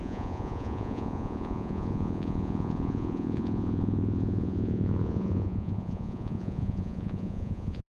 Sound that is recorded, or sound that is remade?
remade